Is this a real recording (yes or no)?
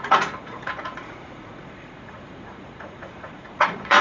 no